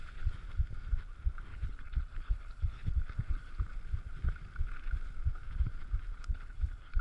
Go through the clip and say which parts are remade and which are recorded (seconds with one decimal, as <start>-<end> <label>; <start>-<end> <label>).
0.0-1.5 recorded; 1.5-3.5 remade; 3.5-6.1 recorded; 6.1-7.0 remade